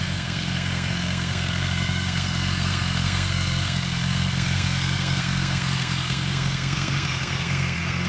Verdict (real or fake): fake